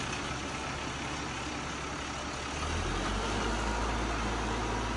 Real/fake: real